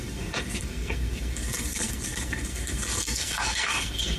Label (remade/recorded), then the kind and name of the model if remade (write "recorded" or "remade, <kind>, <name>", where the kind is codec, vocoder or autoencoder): remade, codec, SNAC